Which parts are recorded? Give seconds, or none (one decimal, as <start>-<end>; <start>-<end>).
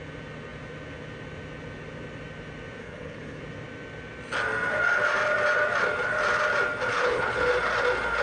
0.0-2.8; 3.4-6.9; 7.5-8.2